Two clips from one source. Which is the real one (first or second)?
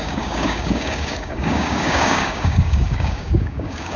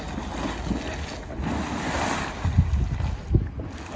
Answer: second